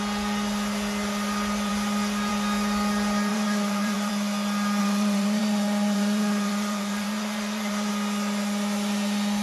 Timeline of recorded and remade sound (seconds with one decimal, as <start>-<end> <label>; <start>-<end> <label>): 0.0-3.3 recorded; 3.3-4.1 remade; 4.1-4.8 recorded; 4.8-7.9 remade; 7.9-9.4 recorded